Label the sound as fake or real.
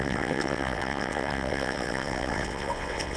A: fake